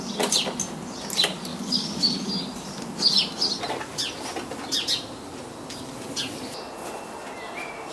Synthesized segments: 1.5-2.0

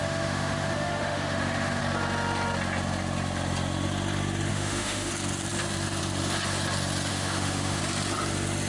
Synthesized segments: 0.0-1.8; 4.5-5.1; 7.1-7.8

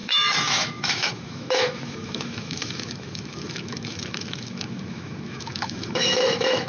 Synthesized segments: 0.0-6.7

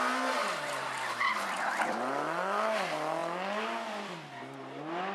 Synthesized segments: none

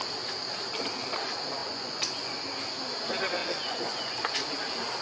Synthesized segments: 1.6-2.4; 3.4-4.5